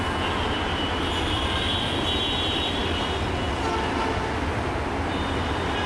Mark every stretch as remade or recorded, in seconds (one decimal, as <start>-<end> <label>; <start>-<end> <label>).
0.0-5.9 recorded